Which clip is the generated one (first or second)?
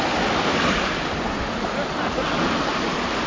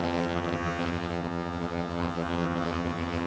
second